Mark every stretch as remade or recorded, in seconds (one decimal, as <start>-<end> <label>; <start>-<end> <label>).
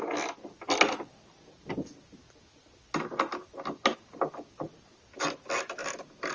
0.0-5.8 recorded; 5.8-6.3 remade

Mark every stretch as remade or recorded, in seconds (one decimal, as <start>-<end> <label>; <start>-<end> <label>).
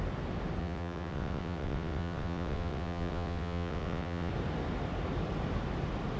0.0-0.6 recorded; 0.6-4.3 remade; 4.3-6.2 recorded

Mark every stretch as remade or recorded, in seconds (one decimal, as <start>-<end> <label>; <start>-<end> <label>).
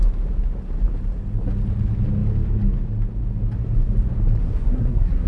0.0-4.4 recorded; 4.4-5.3 remade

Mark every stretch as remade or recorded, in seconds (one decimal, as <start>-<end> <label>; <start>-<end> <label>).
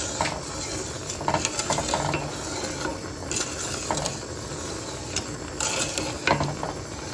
0.0-7.1 recorded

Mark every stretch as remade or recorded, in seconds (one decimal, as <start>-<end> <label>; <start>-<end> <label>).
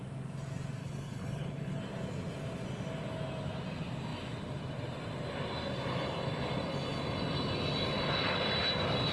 0.0-0.8 recorded; 0.8-1.8 remade; 1.8-9.1 recorded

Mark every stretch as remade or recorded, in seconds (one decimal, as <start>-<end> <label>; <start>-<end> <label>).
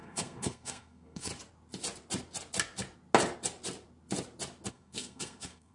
0.0-1.3 remade; 1.3-4.7 recorded; 4.7-5.7 remade